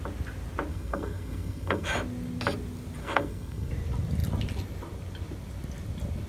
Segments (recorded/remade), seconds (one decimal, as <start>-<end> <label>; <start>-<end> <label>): 0.0-0.7 recorded; 0.7-1.9 remade; 1.9-3.0 recorded; 3.0-3.7 remade; 3.7-6.3 recorded